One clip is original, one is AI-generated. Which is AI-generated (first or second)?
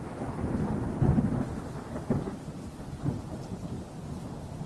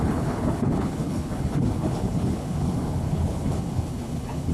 second